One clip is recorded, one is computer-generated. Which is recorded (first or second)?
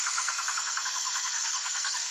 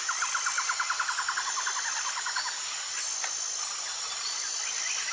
second